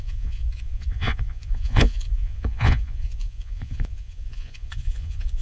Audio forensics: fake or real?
fake